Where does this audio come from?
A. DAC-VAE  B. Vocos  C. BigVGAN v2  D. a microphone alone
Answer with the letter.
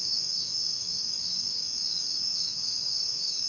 A